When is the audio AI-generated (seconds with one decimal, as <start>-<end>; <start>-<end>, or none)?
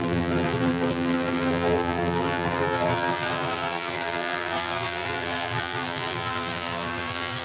0.0-7.4